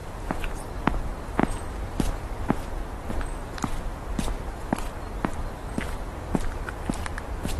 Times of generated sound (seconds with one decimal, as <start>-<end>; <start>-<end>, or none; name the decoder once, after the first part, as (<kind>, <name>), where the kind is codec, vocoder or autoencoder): 0.0-1.4 (vocoder, BigVGAN v2); 2.2-2.8; 5.2-7.6